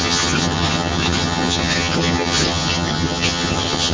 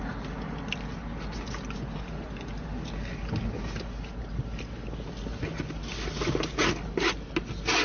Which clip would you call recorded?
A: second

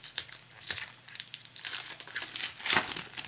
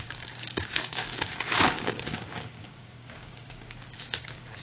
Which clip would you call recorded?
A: first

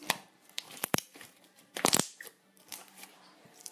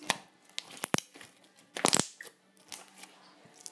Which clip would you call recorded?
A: second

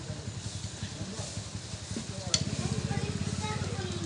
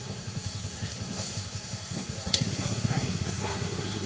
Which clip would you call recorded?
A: first